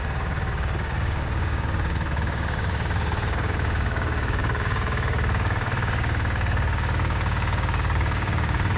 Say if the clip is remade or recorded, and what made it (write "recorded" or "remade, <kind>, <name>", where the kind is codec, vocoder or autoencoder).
remade, codec, DAC